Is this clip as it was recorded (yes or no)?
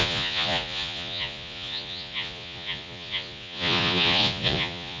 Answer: no